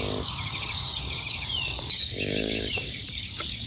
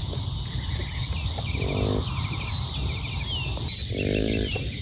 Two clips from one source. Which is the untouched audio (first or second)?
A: second